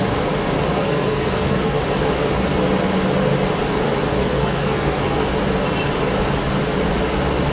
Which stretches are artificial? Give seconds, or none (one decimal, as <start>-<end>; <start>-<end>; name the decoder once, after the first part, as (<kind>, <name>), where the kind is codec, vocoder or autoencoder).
0.7-1.8 (codec, SNAC); 4.2-5.3